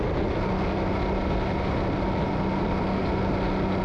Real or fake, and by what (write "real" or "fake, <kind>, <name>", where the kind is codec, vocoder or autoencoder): real